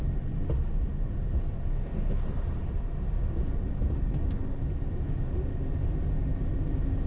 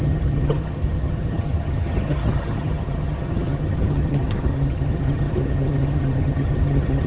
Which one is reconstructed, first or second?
second